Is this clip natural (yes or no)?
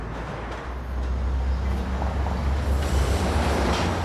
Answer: yes